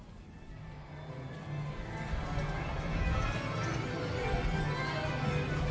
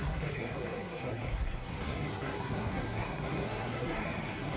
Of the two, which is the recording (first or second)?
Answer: first